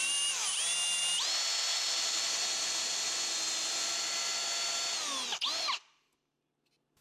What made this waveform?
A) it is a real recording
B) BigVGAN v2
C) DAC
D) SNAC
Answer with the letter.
A